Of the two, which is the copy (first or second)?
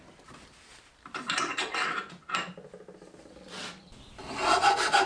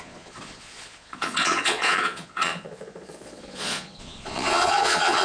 second